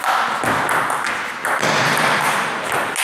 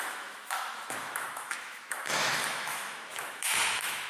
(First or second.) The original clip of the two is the first